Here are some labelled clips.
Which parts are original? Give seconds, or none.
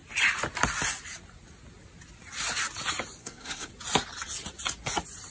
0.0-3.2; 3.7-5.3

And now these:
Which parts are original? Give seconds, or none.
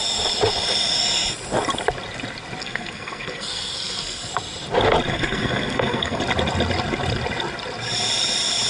0.0-2.6; 4.3-5.1; 6.2-8.7